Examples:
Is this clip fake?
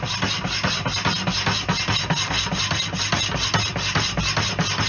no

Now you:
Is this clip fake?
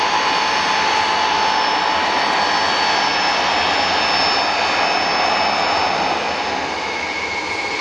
no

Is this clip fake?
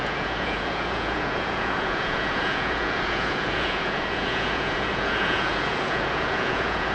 yes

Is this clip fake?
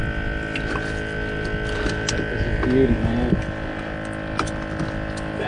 no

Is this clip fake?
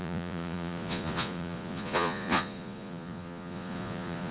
yes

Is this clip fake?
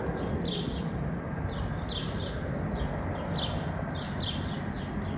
no